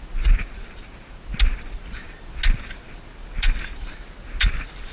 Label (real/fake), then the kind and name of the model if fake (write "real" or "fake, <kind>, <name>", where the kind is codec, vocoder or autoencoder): real